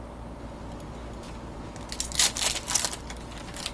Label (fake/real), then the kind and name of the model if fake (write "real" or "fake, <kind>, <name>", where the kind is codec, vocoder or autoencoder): real